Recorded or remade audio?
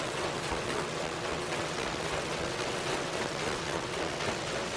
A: remade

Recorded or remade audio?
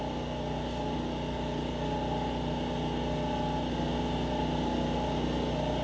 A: recorded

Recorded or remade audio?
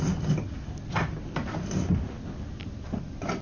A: recorded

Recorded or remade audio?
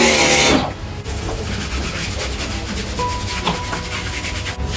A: recorded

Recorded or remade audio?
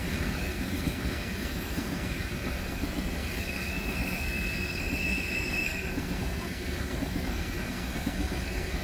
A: remade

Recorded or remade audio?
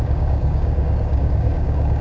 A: remade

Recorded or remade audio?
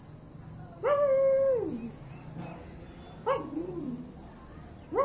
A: recorded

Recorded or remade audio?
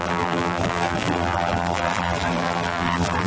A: remade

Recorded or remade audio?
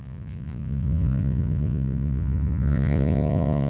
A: remade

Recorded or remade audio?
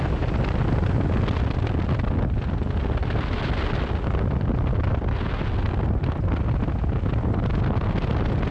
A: recorded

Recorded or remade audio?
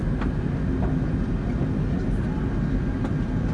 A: recorded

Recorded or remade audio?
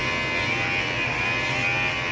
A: recorded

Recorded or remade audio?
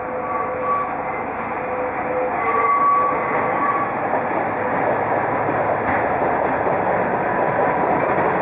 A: recorded